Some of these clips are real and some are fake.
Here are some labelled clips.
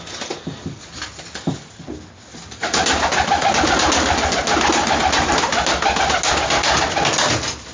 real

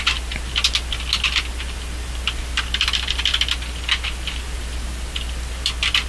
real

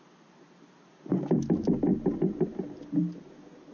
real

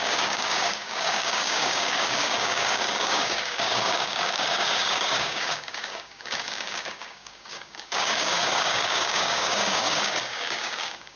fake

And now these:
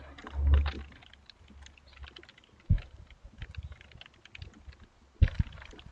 real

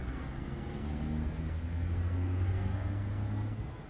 fake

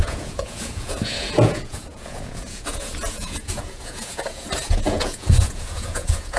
fake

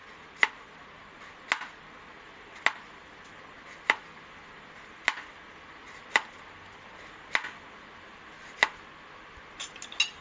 real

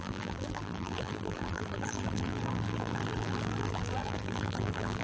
fake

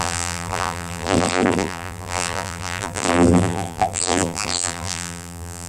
fake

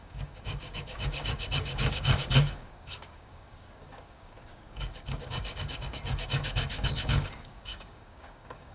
fake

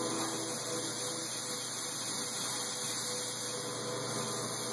real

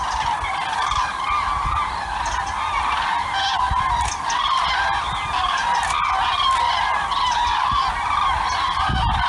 real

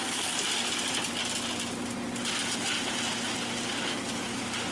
real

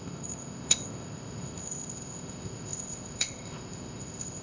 fake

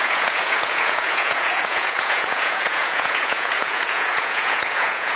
fake